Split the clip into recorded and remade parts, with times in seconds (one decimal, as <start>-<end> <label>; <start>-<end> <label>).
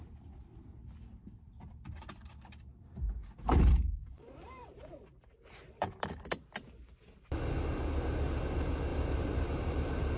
0.0-2.7 recorded; 2.7-6.0 remade; 6.0-8.9 recorded; 8.9-10.2 remade